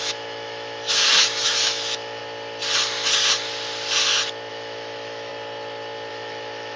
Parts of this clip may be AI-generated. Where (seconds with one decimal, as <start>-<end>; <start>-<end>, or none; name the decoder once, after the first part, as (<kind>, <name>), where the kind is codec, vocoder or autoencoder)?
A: 0.0-2.2 (autoencoder, DAC-VAE); 4.5-5.3; 6.1-6.8